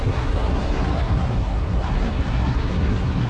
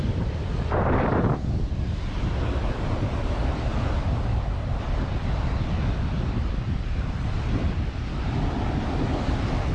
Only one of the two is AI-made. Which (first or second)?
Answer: first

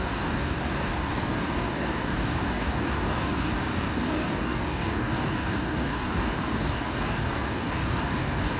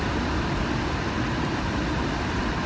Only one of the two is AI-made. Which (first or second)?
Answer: first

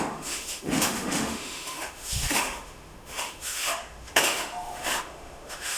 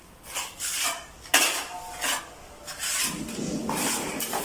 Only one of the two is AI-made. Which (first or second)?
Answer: first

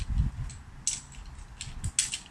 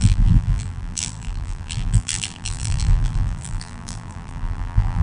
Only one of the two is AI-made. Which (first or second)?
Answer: second